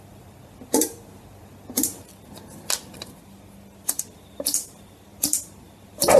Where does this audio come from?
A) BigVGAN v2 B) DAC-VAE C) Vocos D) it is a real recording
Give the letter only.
D